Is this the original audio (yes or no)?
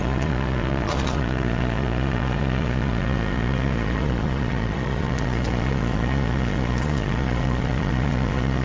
no